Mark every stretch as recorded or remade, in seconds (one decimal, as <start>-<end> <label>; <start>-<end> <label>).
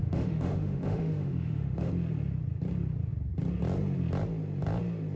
0.0-1.9 remade; 1.9-5.2 recorded